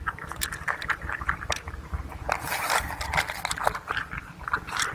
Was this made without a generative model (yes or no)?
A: yes